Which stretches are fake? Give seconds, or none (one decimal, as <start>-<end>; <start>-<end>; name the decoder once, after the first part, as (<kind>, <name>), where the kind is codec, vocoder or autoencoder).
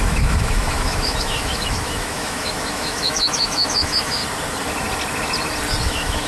0.0-4.2 (autoencoder, DAC-VAE); 5.8-6.3